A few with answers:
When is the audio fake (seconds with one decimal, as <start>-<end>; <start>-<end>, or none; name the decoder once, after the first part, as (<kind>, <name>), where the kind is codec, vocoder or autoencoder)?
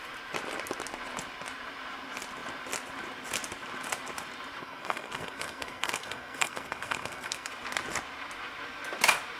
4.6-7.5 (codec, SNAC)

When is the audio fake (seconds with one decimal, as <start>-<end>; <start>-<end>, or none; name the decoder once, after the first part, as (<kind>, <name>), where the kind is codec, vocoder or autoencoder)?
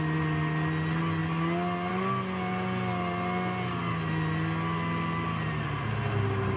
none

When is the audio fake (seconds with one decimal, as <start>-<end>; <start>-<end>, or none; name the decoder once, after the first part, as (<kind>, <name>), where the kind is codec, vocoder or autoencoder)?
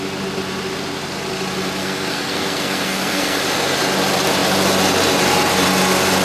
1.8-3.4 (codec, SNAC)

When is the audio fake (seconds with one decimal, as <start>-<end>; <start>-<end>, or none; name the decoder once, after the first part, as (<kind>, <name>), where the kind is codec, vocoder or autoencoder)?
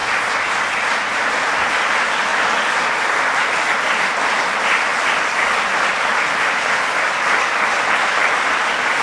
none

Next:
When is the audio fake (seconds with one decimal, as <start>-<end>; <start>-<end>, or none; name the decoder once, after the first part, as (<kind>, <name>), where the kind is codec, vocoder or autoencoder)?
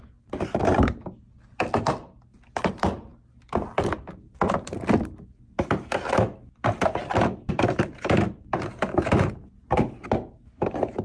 none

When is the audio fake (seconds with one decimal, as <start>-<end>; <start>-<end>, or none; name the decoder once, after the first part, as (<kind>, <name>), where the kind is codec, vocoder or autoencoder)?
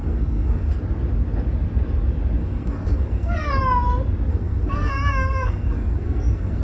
0.0-0.8 (codec, SNAC); 2.4-3.6; 4.3-6.6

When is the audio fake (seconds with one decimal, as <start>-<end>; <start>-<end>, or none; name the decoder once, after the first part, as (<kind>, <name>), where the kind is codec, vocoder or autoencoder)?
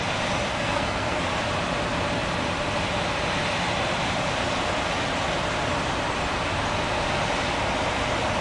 0.5-1.2 (codec, SNAC)